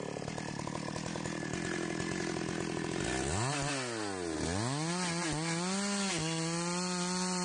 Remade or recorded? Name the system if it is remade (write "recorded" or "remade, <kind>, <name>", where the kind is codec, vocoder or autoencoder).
recorded